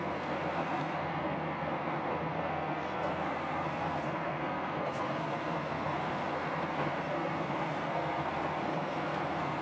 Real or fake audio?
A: fake